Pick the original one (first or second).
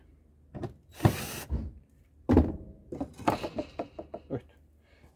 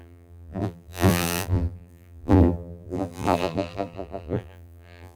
first